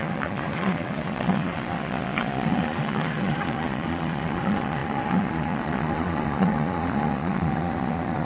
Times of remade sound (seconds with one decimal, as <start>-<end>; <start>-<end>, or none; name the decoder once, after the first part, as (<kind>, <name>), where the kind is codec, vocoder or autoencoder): 0.0-8.2 (vocoder, Vocos)